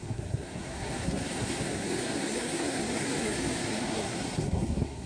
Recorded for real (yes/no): no